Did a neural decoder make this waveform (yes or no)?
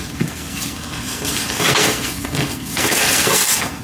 yes